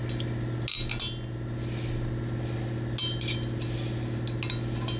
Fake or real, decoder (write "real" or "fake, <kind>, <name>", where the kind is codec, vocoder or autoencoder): real